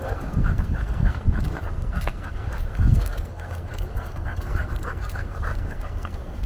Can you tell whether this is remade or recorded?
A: remade